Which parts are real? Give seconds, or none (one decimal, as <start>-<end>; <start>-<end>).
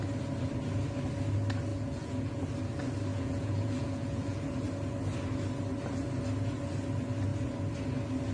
0.0-1.7; 2.4-3.1; 4.4-8.3